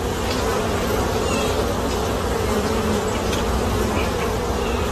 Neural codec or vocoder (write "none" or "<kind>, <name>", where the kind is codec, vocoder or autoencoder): none